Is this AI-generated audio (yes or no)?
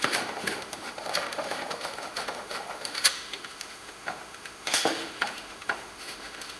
yes